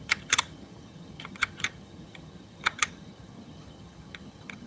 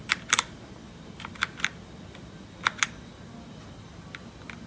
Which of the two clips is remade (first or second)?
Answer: first